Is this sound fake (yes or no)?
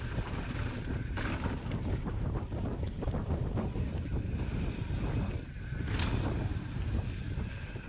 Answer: no